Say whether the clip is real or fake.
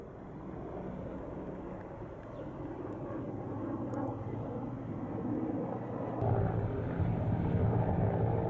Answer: real